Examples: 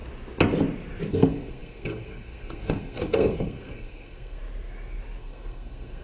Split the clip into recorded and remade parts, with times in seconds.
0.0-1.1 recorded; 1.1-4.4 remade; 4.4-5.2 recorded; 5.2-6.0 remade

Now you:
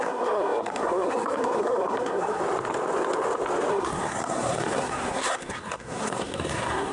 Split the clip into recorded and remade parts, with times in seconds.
0.0-2.4 remade; 2.4-3.7 recorded; 3.7-6.9 remade

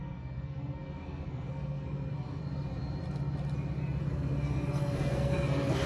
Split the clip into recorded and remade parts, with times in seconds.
0.0-2.4 remade; 2.4-4.0 recorded; 4.0-5.9 remade

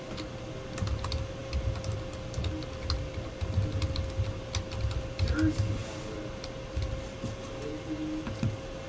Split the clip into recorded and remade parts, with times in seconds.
0.0-8.9 recorded

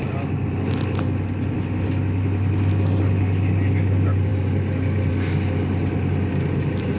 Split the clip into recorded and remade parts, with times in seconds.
0.0-7.0 recorded

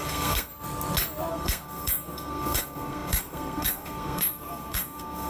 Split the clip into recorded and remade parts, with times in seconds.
0.0-0.5 remade; 0.5-1.3 recorded; 1.3-5.3 remade

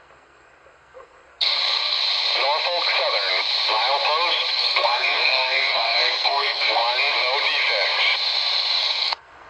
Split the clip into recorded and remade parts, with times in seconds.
0.0-2.0 remade; 2.0-4.5 recorded; 4.5-6.8 remade; 6.8-8.8 recorded; 8.8-9.5 remade